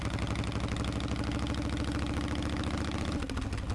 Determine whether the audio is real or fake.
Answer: real